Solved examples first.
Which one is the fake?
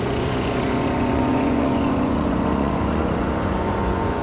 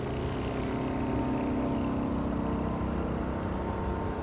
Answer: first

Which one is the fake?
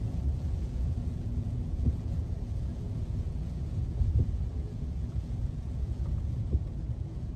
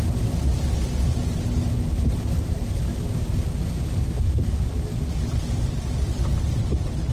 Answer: first